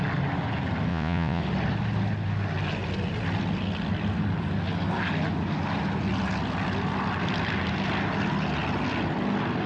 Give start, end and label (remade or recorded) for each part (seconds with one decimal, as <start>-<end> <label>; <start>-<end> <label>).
0.0-0.9 recorded; 0.9-1.4 remade; 1.4-9.7 recorded